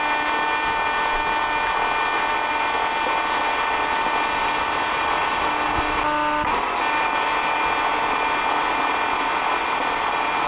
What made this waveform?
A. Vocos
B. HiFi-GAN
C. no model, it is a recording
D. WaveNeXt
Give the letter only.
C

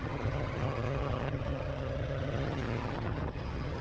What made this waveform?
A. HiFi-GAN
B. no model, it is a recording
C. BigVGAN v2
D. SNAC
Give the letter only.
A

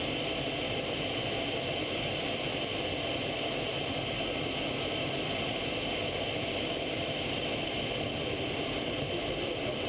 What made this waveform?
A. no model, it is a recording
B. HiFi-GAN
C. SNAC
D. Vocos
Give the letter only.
A